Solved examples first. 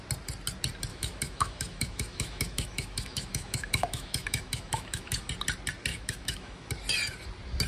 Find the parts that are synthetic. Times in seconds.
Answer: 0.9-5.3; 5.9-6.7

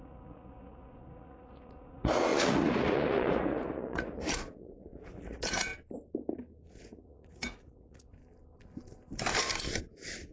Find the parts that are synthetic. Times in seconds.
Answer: 0.0-5.7; 6.7-8.2; 9.8-10.3